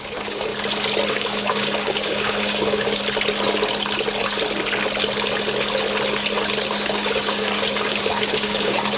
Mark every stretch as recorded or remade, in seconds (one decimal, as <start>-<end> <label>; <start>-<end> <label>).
0.0-0.5 remade; 0.5-1.1 recorded; 1.1-3.0 remade; 3.0-6.7 recorded; 6.7-9.0 remade